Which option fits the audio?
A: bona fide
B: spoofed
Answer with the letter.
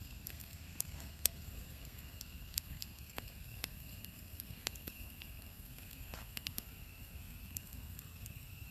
B